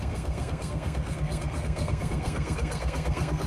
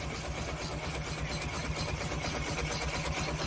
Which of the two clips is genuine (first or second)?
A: second